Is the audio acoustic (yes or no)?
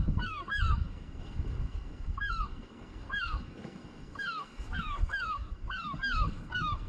no